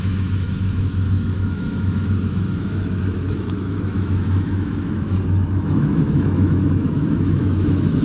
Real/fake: fake